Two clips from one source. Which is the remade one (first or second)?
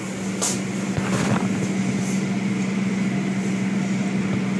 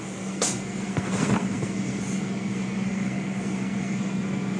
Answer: second